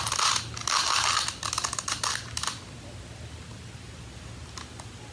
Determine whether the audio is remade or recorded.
recorded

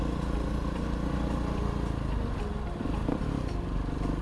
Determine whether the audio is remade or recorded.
recorded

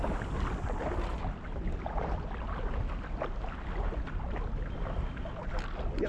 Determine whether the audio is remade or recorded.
recorded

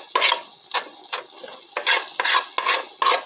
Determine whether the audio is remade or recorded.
recorded